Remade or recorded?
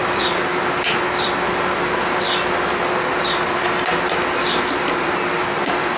recorded